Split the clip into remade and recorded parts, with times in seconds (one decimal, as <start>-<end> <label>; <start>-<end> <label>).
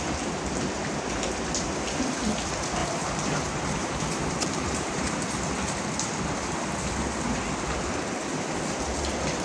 0.0-2.8 recorded; 2.8-5.1 remade; 5.1-9.4 recorded